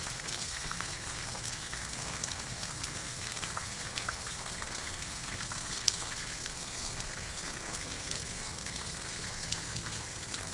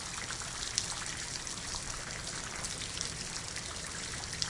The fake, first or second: first